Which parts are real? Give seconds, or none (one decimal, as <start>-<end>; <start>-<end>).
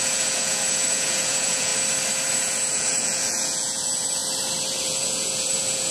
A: 1.7-2.3; 4.2-4.8